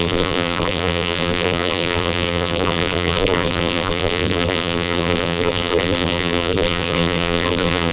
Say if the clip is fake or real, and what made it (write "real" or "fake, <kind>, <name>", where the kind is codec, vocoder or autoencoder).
fake, vocoder, BigVGAN v2